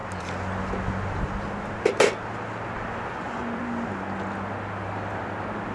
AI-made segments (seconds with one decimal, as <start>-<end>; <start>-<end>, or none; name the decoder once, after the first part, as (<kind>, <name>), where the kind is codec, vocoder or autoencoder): 3.1-3.6 (vocoder, Vocos)